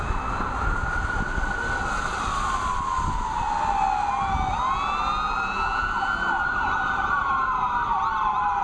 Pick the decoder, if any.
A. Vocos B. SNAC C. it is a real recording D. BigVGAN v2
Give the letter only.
C